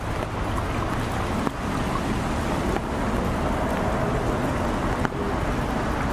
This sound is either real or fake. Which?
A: real